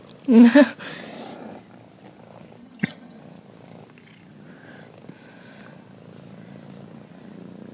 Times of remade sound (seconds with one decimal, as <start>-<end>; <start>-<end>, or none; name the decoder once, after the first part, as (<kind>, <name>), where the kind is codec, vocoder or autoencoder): 2.6-3.2 (vocoder, HiFi-GAN)